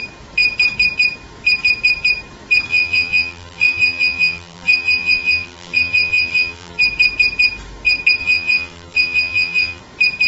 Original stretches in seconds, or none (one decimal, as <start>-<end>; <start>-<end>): 0.0-2.7; 6.8-8.2; 9.8-10.3